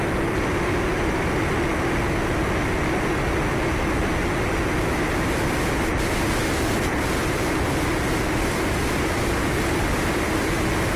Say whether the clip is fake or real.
real